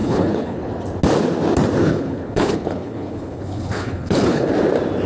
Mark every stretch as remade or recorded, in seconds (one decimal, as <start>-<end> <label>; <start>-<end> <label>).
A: 0.0-0.7 remade; 0.7-1.8 recorded; 1.8-4.5 remade; 4.5-5.1 recorded